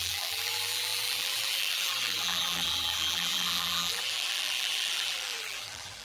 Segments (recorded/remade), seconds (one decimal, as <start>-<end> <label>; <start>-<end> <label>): 0.0-6.0 remade